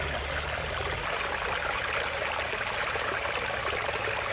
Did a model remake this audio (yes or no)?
no